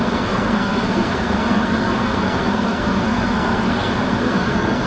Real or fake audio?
fake